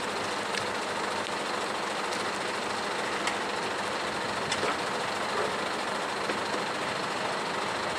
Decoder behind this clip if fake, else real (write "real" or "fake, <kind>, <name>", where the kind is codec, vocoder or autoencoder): real